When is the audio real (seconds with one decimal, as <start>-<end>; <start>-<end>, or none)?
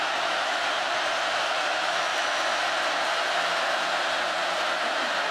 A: 0.6-1.3; 2.1-5.3